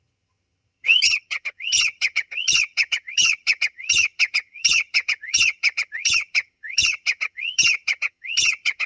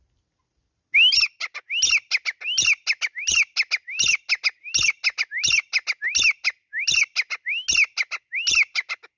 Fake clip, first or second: first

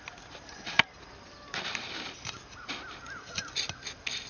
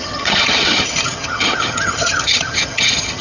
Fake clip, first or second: second